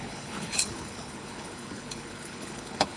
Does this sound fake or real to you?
fake